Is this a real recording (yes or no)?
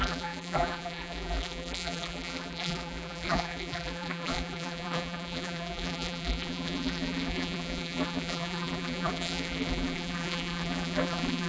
no